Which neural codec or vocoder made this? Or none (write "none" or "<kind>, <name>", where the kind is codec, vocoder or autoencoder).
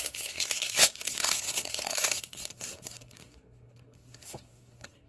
codec, SNAC